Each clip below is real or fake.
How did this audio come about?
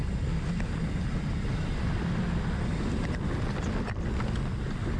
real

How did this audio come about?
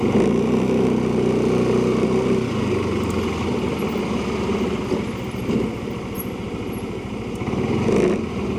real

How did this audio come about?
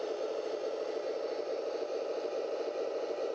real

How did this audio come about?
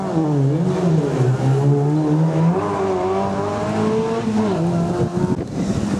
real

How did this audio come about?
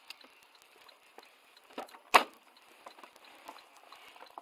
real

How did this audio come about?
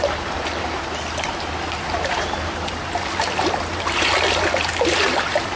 fake